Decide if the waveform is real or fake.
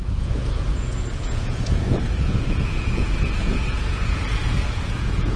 fake